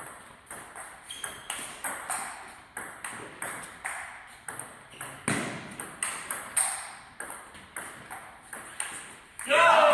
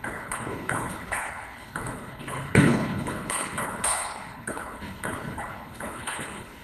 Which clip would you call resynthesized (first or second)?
second